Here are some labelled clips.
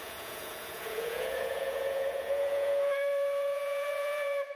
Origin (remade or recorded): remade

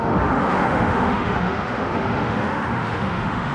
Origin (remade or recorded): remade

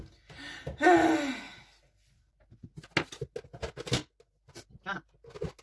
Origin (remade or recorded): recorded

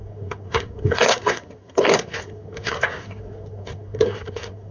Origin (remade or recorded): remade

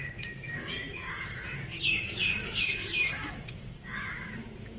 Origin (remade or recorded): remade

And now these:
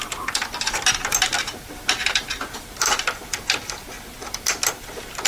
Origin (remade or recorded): remade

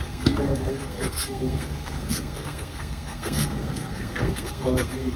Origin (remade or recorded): remade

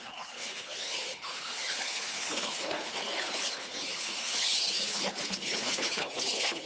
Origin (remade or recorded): remade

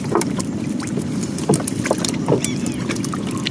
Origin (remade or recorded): remade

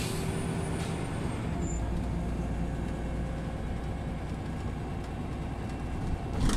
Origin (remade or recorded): recorded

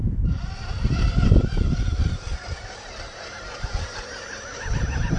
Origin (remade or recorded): remade